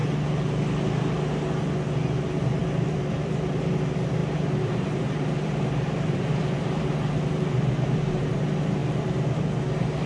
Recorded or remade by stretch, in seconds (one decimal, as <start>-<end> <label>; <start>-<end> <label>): 0.0-2.6 recorded; 2.6-3.5 remade; 3.5-4.2 recorded; 4.2-8.2 remade; 8.2-8.8 recorded; 8.8-9.4 remade; 9.4-10.1 recorded